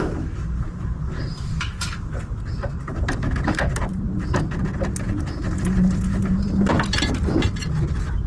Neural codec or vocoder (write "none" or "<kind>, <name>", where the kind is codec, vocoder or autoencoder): none